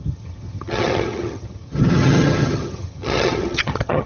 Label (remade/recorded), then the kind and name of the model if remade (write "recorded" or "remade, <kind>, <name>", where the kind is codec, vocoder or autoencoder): remade, vocoder, HiFi-GAN